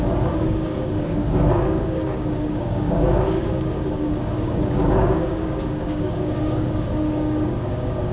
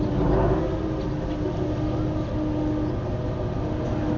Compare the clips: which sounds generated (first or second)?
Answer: first